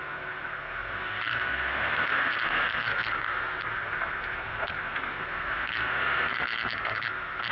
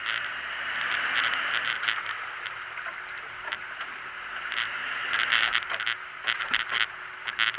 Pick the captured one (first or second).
second